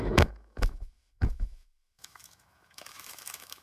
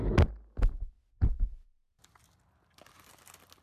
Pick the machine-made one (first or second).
first